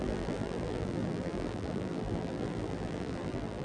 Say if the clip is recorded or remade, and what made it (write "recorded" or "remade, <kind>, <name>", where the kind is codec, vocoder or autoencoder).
remade, vocoder, BigVGAN v2